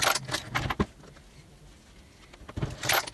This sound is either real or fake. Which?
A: real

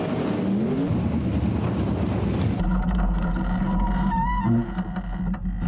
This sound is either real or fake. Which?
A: real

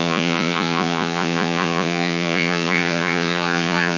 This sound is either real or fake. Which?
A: fake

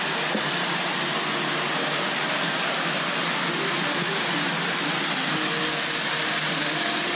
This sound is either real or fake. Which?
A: real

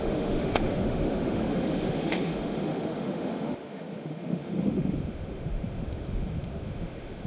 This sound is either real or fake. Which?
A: fake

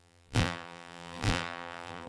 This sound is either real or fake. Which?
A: fake